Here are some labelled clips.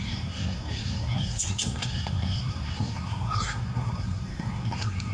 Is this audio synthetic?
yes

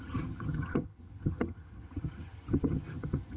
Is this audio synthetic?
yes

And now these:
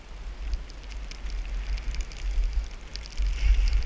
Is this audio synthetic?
no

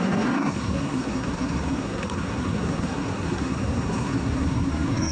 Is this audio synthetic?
yes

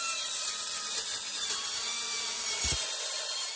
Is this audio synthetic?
yes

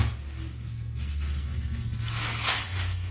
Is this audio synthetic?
yes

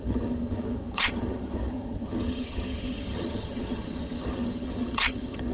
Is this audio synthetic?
yes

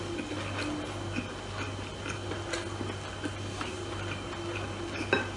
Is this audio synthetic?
no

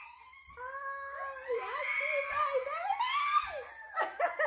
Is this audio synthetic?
no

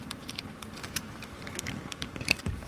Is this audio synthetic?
yes